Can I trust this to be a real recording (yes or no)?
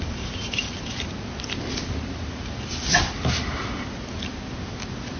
yes